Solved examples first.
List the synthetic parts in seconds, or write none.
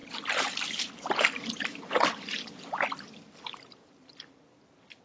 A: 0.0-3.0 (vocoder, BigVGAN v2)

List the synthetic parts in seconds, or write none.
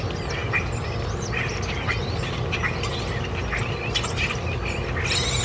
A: none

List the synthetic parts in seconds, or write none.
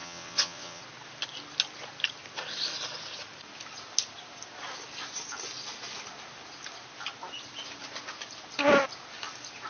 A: 0.0-0.8 (vocoder, WaveNeXt)